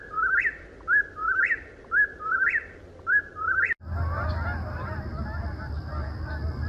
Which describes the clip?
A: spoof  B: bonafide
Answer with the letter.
B